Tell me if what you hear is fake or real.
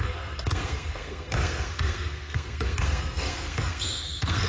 fake